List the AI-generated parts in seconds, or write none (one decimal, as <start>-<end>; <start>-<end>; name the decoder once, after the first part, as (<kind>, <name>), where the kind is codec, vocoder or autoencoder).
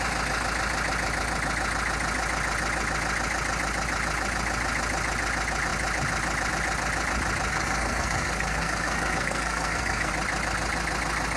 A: 7.5-10.1 (codec, SNAC)